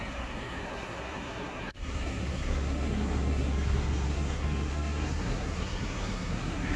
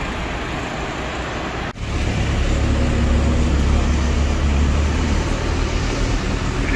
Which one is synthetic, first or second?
first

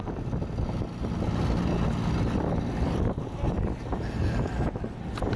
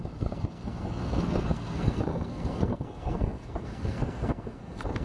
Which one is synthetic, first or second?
second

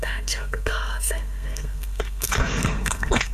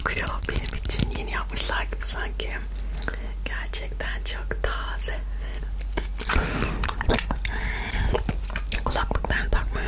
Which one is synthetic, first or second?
first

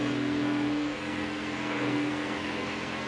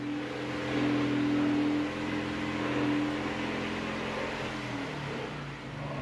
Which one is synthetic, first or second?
first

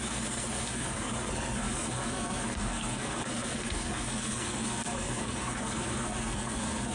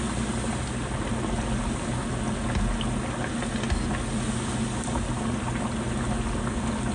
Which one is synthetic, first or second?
first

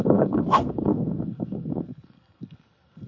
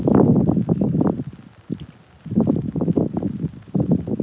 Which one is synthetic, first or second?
first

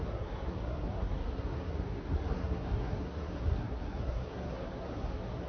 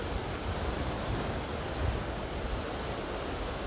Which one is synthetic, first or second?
first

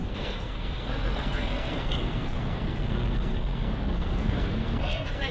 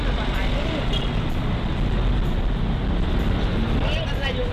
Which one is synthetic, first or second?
first